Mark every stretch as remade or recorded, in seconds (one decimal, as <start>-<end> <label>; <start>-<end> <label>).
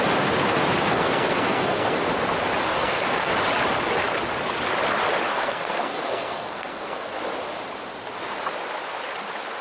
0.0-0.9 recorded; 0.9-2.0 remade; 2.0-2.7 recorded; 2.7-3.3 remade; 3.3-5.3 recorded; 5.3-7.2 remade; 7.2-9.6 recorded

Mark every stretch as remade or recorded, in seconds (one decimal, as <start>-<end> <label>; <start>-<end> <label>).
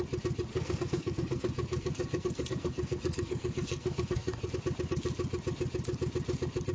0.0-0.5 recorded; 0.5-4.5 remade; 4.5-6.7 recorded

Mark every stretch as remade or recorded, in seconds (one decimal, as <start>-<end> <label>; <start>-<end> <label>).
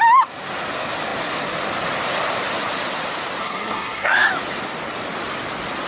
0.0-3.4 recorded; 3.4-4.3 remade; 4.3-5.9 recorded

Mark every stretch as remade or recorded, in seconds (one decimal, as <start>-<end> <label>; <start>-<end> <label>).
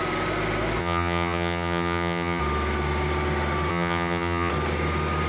0.0-0.8 recorded; 0.8-2.4 remade; 2.4-3.7 recorded; 3.7-4.5 remade; 4.5-5.3 recorded